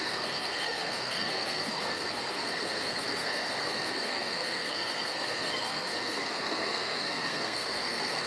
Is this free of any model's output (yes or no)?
no